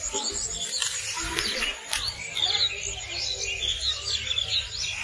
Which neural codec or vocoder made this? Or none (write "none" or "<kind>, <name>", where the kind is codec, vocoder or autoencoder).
none